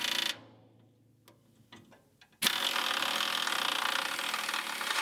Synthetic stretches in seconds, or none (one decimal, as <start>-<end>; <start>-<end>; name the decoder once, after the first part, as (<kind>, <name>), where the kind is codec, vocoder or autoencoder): none